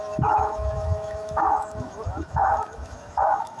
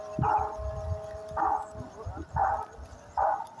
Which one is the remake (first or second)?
first